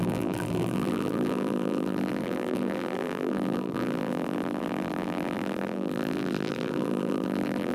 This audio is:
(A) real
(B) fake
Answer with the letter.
B